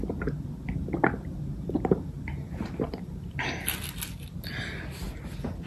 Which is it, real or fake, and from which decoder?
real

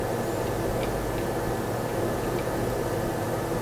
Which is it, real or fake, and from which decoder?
real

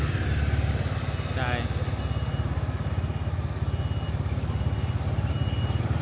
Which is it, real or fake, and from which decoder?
real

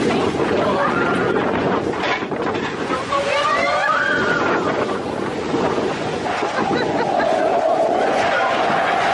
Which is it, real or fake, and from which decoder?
fake, vocoder, Vocos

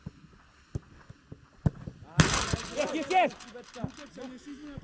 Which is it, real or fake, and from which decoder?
real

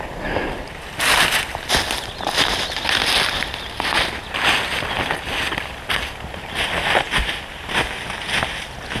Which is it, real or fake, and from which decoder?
real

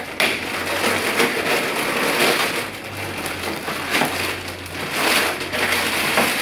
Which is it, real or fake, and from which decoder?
real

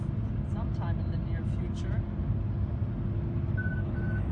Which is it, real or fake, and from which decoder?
real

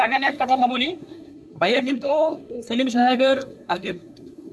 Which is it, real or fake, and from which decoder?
fake, codec, SNAC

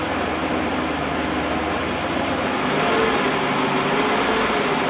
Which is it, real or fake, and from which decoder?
real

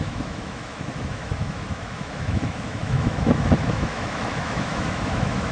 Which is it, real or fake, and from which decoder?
fake, autoencoder, DAC-VAE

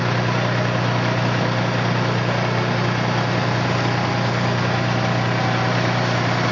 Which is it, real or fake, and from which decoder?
real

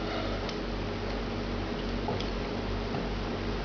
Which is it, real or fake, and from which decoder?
fake, vocoder, BigVGAN v2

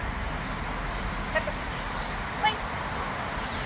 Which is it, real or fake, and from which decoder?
real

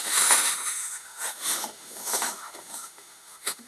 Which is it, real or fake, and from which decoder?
fake, autoencoder, DAC-VAE